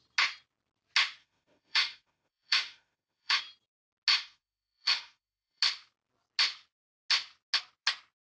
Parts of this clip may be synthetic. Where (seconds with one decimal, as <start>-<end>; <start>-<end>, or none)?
1.2-3.4; 4.1-5.6